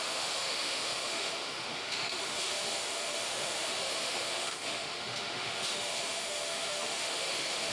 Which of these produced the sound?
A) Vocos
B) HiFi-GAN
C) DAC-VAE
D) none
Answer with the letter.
C